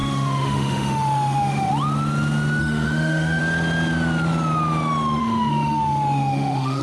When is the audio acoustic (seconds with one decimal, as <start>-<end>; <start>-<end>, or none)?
1.7-2.6; 3.4-5.2